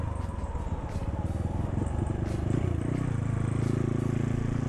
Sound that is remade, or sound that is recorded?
recorded